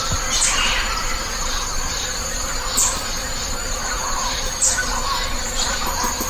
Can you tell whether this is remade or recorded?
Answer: recorded